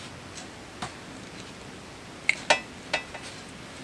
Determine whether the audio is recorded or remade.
recorded